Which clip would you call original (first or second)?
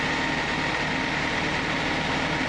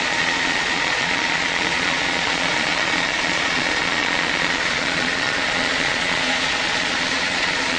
first